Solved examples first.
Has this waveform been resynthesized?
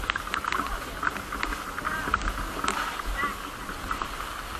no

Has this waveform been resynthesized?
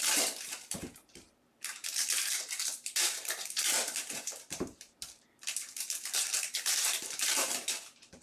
yes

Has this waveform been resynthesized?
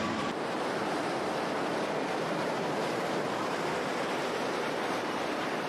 yes